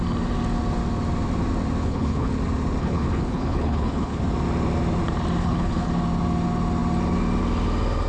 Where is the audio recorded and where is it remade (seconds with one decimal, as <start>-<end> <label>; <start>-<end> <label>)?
0.0-1.8 recorded; 1.8-2.3 remade; 2.3-2.8 recorded; 2.8-4.2 remade; 4.2-5.4 recorded; 5.4-5.9 remade; 5.9-8.1 recorded